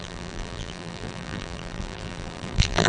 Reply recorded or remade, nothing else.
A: remade